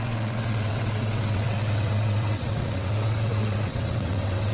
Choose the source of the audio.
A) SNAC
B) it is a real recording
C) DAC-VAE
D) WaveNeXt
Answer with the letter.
D